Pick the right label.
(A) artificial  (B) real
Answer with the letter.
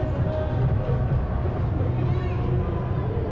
B